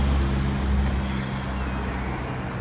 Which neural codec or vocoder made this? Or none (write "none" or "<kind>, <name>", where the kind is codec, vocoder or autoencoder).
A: none